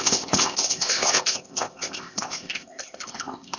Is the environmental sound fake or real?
fake